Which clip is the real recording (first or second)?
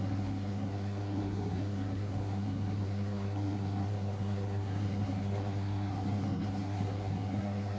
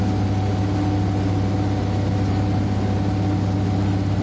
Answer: second